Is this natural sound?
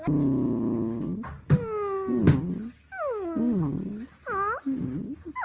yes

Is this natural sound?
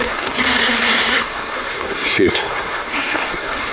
no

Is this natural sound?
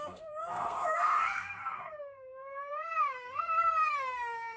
no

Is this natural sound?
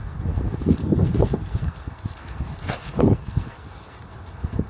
no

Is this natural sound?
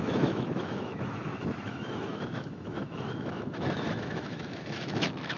no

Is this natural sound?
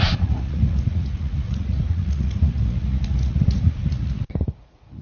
no